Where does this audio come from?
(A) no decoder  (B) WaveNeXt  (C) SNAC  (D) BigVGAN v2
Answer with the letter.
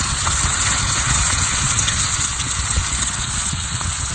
B